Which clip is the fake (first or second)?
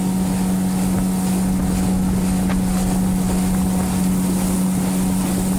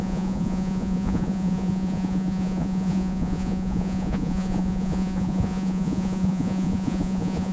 second